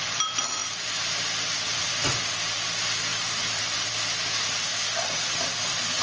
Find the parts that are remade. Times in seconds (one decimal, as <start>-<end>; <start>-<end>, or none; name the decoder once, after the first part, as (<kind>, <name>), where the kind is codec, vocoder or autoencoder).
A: 3.1-3.9 (vocoder, BigVGAN v2); 4.7-5.5

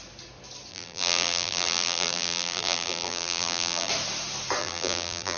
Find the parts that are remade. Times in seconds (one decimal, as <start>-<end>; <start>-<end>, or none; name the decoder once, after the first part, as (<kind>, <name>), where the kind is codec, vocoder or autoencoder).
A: 0.7-3.9 (vocoder, BigVGAN v2); 4.6-5.4

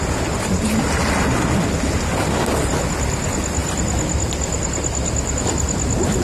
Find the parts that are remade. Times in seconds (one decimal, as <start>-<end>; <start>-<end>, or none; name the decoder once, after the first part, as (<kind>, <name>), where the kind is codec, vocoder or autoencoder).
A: 3.6-5.4 (vocoder, BigVGAN v2)